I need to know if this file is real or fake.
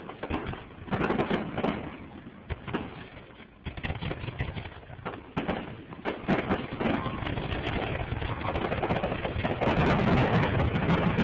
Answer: real